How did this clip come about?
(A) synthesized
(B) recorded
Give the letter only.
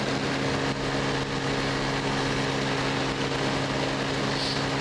B